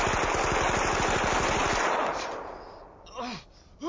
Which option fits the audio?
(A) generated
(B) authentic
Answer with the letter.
B